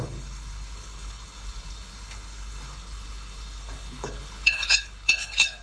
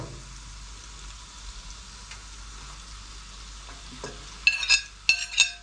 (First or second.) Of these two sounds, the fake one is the first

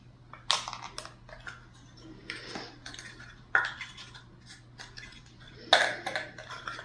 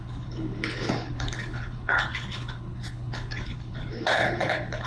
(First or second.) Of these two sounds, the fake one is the second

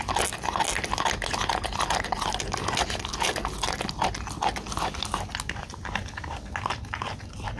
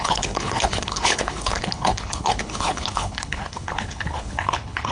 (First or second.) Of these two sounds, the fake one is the second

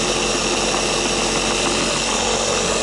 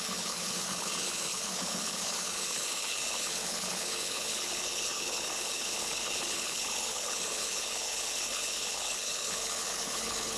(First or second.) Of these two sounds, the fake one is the second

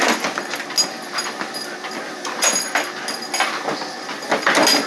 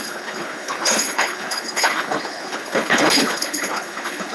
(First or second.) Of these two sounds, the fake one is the second